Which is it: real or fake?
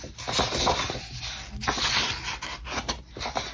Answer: real